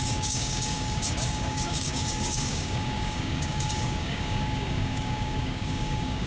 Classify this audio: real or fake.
fake